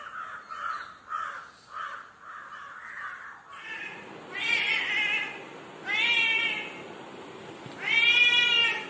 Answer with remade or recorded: recorded